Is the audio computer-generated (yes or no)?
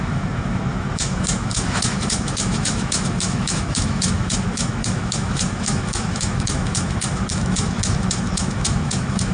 yes